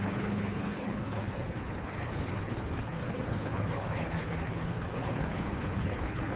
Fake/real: fake